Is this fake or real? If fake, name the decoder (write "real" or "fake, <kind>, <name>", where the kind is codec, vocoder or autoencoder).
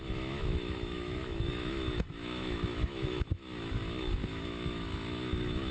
fake, autoencoder, DAC-VAE